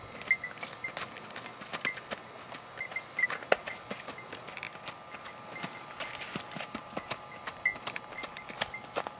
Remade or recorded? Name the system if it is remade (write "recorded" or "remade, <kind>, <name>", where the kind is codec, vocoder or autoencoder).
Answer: recorded